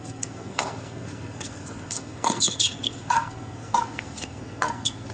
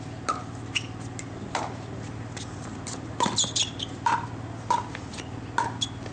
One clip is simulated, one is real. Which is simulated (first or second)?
first